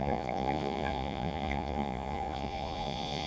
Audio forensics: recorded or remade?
remade